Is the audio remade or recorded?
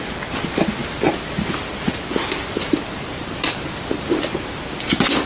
recorded